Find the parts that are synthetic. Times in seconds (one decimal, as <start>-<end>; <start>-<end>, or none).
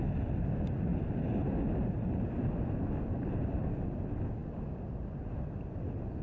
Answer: none